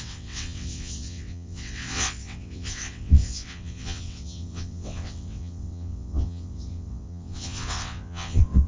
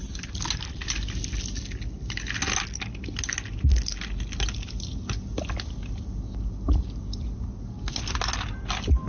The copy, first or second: first